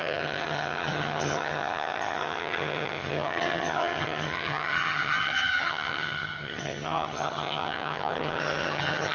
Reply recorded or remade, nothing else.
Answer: remade